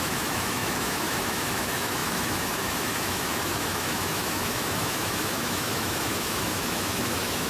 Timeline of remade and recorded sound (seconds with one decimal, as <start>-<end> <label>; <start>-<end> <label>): 0.0-7.5 remade